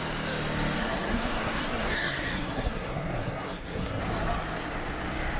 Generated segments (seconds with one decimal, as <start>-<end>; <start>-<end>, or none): 0.8-4.0